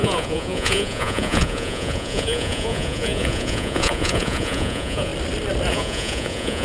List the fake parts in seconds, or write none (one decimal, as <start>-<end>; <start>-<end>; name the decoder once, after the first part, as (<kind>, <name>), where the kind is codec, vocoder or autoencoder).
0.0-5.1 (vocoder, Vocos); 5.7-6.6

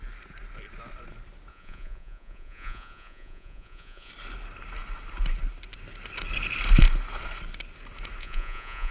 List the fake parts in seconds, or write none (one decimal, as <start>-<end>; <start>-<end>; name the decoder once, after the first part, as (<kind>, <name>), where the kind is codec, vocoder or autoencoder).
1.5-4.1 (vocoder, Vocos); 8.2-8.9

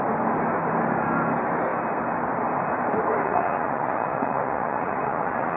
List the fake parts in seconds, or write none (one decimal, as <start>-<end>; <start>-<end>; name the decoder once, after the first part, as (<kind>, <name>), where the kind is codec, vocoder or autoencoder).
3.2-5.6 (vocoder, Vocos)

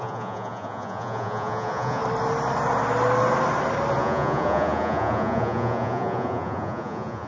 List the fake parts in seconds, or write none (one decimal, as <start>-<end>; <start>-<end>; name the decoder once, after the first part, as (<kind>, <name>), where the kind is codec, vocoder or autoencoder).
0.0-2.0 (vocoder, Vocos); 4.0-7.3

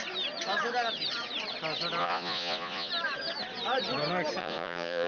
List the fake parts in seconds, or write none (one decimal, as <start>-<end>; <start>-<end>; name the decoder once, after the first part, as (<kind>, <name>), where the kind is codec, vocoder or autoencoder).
2.0-2.9 (vocoder, Vocos); 4.4-5.1